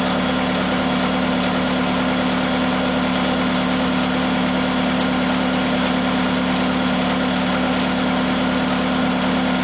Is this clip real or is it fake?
real